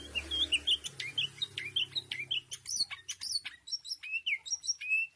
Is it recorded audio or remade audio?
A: recorded